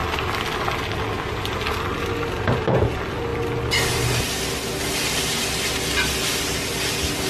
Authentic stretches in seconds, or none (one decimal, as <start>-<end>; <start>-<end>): 0.0-7.3